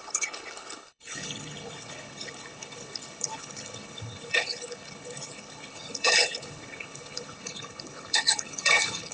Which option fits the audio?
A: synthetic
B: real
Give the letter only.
A